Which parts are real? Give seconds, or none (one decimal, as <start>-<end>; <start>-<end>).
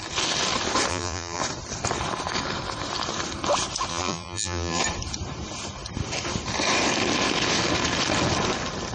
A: 0.0-0.9; 1.4-3.9; 4.8-8.9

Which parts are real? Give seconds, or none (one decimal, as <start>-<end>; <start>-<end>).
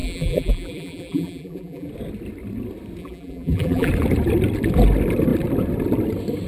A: 1.9-3.0; 3.9-6.5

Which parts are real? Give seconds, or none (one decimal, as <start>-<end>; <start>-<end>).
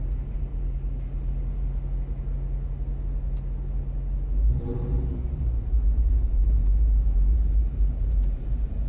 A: 0.5-4.6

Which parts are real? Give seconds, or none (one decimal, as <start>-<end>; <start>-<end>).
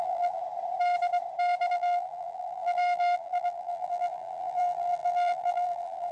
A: 0.4-1.7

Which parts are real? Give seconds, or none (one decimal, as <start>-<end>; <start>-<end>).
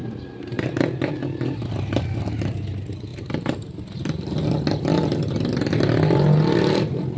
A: 0.7-3.1; 4.3-7.2